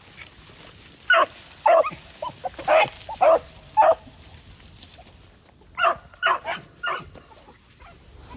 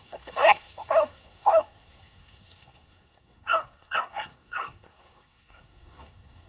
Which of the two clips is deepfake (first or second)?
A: second